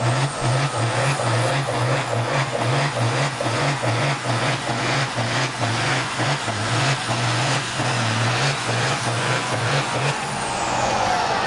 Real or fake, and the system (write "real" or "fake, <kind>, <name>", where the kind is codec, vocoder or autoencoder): fake, vocoder, Vocos